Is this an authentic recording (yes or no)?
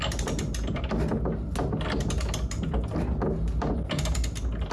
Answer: yes